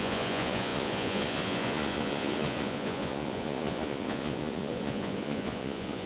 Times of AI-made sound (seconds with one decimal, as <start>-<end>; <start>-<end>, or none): 0.0-6.1

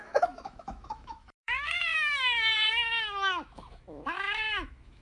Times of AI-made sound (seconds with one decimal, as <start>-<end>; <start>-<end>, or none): 0.0-5.0

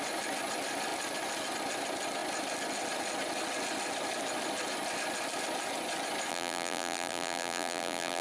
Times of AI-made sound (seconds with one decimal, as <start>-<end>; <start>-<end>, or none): 6.3-8.2

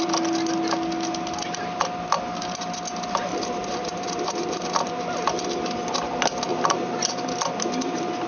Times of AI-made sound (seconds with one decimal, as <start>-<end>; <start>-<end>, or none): 3.3-4.7; 6.5-7.1

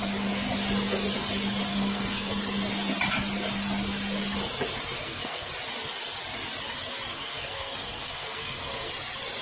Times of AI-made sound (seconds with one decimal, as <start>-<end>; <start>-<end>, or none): 1.7-2.4; 5.0-5.5; 7.1-8.9

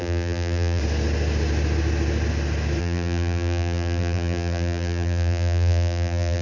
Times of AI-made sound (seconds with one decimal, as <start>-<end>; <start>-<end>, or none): 0.0-0.8; 2.8-6.4

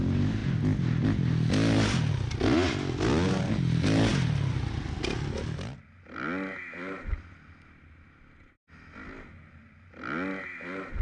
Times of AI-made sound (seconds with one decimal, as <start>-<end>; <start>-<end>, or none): none

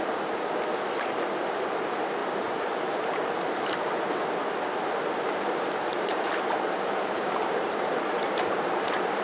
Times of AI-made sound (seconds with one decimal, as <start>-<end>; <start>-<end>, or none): 2.2-4.2; 5.9-9.2